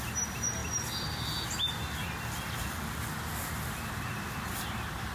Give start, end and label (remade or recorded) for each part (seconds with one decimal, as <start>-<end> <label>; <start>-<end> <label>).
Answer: 0.0-5.1 recorded